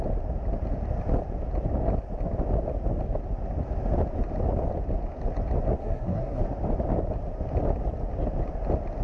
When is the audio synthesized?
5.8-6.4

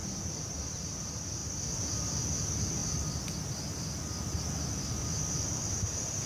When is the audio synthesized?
0.0-1.4; 2.4-2.8; 5.6-6.3

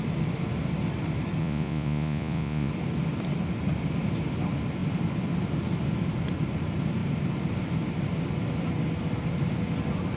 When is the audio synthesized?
1.4-2.7

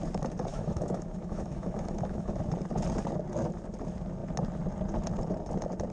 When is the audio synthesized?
0.5-2.4

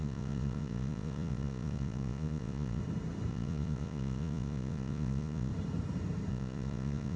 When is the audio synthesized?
0.0-2.8; 3.3-5.5; 6.3-7.2

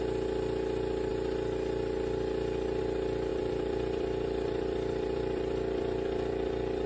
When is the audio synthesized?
3.3-6.9